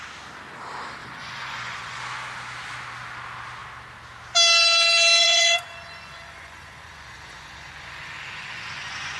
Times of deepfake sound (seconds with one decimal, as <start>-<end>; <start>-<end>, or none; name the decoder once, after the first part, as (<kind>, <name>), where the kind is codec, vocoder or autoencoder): 1.0-2.0 (vocoder, Vocos); 5.2-9.2